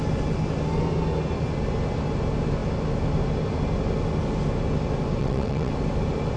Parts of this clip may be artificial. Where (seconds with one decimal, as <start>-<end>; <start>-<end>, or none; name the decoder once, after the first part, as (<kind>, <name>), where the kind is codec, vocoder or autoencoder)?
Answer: 5.2-5.7 (vocoder, WaveNeXt)